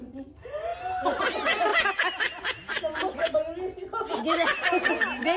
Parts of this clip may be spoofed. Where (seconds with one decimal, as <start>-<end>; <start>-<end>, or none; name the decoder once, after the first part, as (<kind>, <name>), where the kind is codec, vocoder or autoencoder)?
none